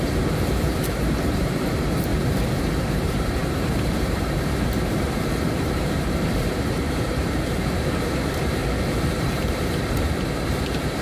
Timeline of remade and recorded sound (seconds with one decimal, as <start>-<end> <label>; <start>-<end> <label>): 0.0-2.1 remade; 2.1-2.9 recorded; 2.9-8.6 remade; 8.6-9.1 recorded; 9.1-11.0 remade